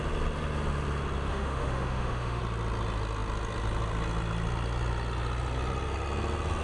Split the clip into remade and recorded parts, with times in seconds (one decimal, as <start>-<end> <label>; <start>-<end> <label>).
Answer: 0.0-1.3 recorded; 1.3-2.4 remade; 2.4-6.6 recorded